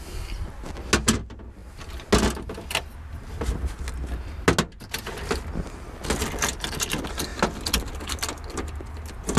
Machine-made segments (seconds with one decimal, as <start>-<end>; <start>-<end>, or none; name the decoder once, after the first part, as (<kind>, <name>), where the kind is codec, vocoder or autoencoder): none